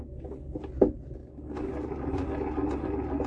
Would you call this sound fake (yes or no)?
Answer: no